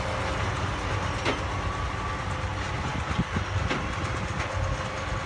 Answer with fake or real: real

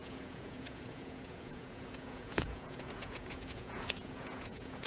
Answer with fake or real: fake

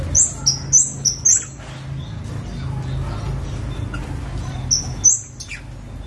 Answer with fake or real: real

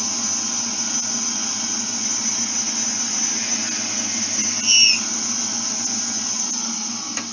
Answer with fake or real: real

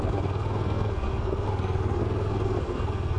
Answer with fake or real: fake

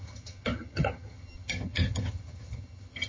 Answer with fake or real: fake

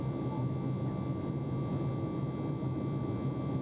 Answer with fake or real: real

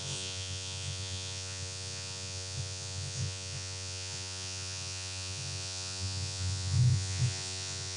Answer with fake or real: fake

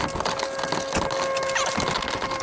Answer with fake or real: real